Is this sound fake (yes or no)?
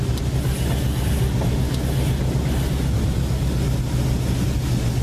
no